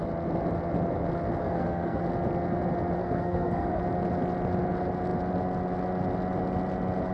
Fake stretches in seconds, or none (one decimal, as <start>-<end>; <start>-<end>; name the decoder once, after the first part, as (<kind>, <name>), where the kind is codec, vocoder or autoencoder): 1.4-2.0 (codec, SNAC); 3.0-3.8